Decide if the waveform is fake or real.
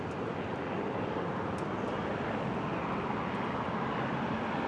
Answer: fake